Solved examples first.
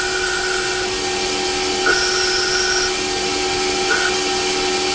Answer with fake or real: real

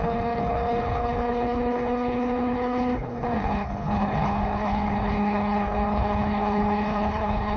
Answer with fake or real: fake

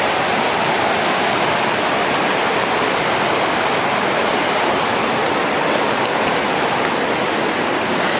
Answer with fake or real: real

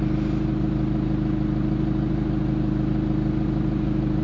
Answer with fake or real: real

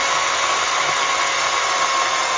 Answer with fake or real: real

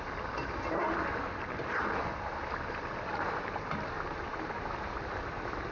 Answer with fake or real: real